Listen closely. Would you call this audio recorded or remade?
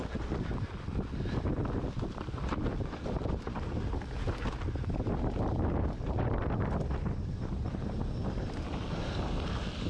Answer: recorded